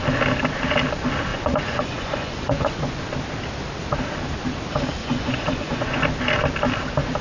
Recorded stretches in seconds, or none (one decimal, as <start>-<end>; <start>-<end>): 0.0-1.3; 3.0-5.0; 6.2-7.2